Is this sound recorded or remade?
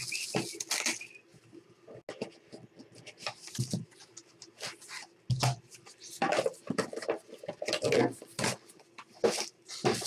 recorded